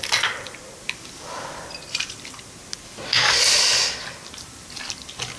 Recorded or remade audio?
recorded